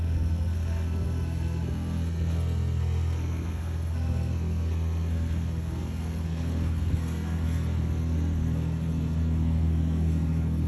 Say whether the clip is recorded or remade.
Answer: remade